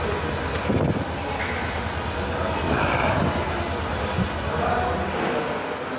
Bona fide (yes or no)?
yes